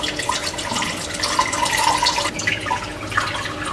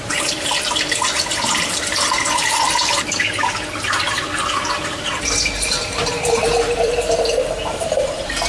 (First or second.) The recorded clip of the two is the first